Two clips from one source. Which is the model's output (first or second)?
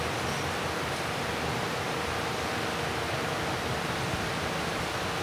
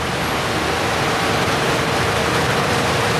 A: first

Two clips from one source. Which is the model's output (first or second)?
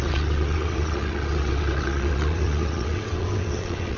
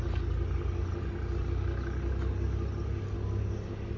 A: first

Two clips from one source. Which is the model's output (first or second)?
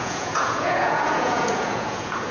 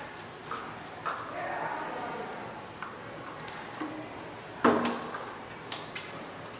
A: first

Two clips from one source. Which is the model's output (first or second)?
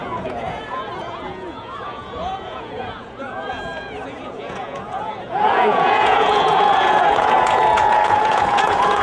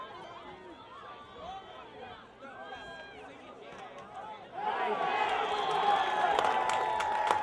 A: first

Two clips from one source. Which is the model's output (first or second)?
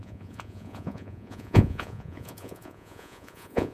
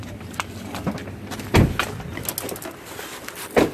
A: first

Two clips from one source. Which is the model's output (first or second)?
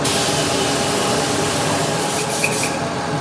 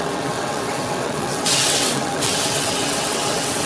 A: second